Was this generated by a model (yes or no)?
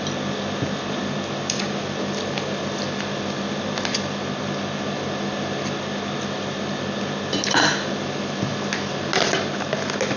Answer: no